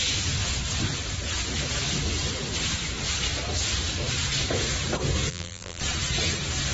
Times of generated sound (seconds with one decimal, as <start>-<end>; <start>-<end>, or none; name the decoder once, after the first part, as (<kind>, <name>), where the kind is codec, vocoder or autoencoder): 5.3-5.8 (vocoder, BigVGAN v2)